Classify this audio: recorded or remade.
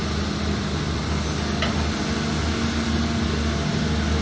recorded